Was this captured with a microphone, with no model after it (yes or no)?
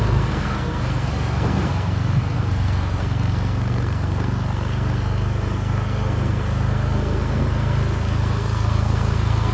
no